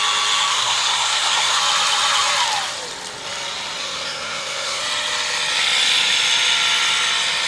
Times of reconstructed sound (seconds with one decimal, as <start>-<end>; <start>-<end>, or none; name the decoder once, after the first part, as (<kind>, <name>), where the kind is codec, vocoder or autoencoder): 0.5-1.6 (codec, SNAC); 3.8-4.8